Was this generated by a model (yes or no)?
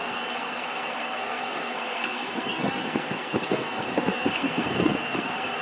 yes